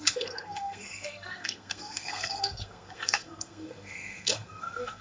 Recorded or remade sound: remade